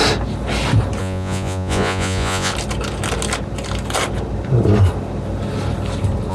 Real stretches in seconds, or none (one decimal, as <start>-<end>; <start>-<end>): 0.0-1.0; 2.5-6.3

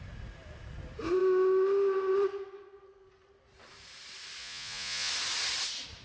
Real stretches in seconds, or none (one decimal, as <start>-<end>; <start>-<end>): 0.0-4.4; 5.1-6.0

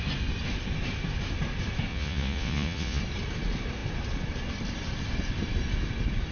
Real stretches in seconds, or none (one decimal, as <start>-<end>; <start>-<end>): 0.0-1.9; 3.0-6.3

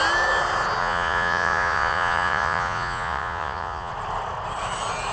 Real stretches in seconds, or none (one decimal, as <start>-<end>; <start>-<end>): 0.0-0.8; 3.9-5.1

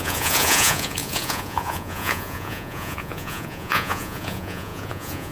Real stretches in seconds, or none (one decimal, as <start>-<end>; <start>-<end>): none

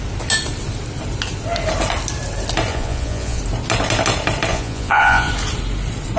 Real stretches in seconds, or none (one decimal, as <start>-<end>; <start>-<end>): 0.0-2.7; 3.4-4.5; 5.3-6.2